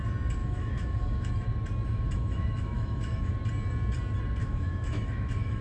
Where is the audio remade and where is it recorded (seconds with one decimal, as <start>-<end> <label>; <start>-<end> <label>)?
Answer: 0.0-0.4 recorded; 0.4-1.3 remade; 1.3-1.9 recorded; 1.9-3.3 remade; 3.3-4.4 recorded; 4.4-5.6 remade